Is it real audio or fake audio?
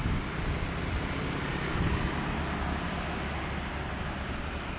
real